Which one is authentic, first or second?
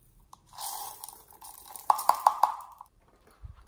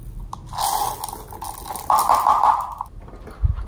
second